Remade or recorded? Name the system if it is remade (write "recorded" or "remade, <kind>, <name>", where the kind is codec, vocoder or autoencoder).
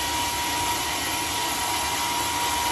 recorded